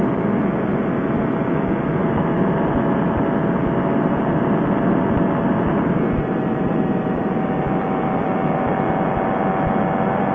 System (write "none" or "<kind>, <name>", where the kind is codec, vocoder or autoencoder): none